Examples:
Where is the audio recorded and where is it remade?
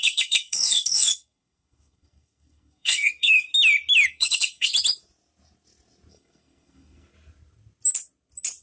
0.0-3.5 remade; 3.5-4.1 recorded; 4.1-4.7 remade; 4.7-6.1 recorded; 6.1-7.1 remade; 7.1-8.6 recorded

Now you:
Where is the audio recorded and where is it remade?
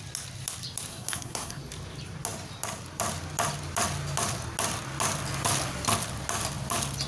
0.0-0.9 recorded; 0.9-1.6 remade; 1.6-7.1 recorded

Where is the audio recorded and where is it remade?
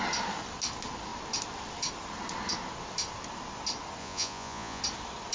0.0-4.0 recorded; 4.0-4.8 remade; 4.8-5.3 recorded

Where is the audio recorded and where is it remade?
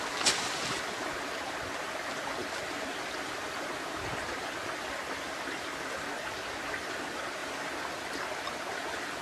0.0-9.2 recorded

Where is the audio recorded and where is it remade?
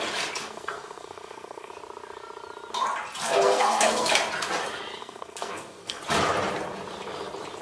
0.0-0.4 recorded; 0.4-1.7 remade; 1.7-3.2 recorded; 3.2-4.1 remade; 4.1-5.0 recorded; 5.0-6.0 remade; 6.0-7.6 recorded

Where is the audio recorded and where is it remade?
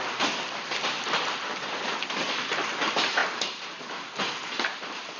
0.0-5.2 recorded